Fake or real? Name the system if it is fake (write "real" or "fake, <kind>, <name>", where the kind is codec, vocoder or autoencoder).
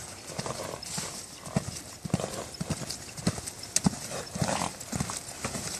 real